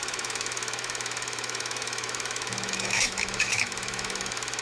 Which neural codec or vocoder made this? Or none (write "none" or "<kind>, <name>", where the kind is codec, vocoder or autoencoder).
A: autoencoder, DAC-VAE